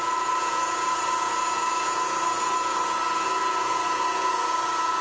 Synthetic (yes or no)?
yes